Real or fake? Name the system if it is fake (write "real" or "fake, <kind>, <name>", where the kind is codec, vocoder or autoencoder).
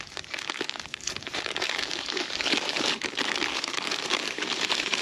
fake, codec, DAC